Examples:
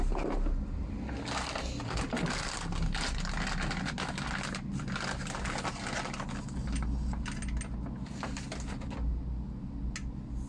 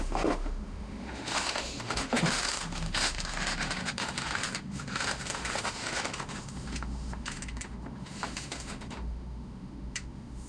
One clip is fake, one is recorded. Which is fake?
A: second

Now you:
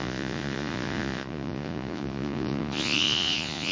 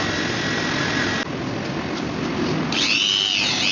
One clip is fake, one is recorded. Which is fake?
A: first